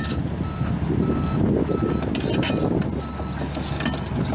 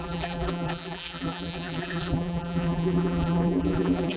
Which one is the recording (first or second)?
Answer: first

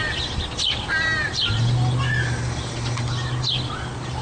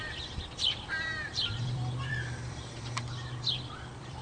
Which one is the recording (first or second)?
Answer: first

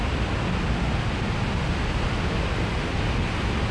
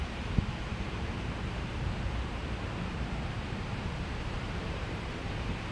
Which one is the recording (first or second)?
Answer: first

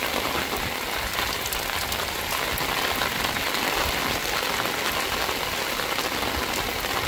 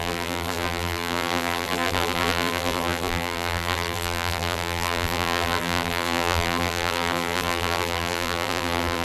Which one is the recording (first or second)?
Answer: first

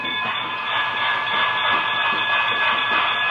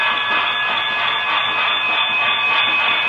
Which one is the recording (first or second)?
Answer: second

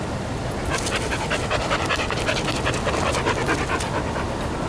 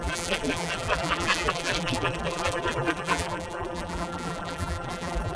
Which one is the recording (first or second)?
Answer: first